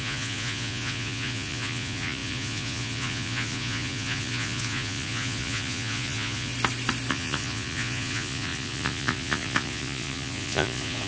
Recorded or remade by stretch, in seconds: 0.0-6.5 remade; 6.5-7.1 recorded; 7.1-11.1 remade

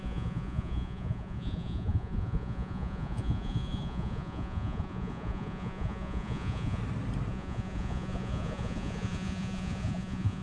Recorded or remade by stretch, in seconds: 0.0-6.8 remade; 6.8-7.3 recorded; 7.3-10.4 remade

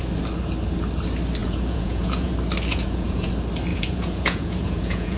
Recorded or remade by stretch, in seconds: 0.0-1.4 recorded; 1.4-2.3 remade; 2.3-2.7 recorded; 2.7-3.3 remade; 3.3-3.7 recorded; 3.7-5.2 remade

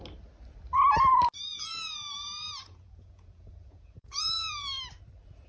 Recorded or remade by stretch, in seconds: 0.0-1.4 recorded; 1.4-4.7 remade; 4.7-5.5 recorded

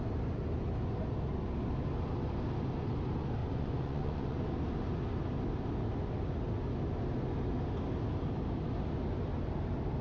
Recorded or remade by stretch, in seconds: 0.0-3.4 recorded; 3.4-4.4 remade; 4.4-10.0 recorded